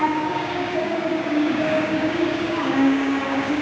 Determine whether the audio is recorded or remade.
remade